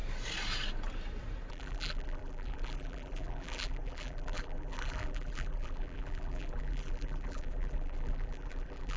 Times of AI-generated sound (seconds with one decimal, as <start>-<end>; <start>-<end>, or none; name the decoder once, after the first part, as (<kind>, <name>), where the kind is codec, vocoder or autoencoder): 1.5-9.0 (vocoder, BigVGAN v2)